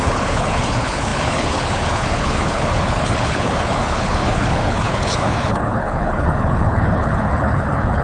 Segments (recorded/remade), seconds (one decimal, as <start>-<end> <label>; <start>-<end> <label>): 0.0-8.0 remade